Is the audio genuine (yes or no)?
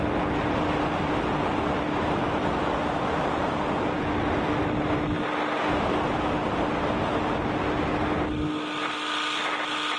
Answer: yes